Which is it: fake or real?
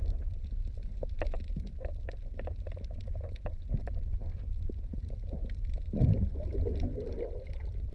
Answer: real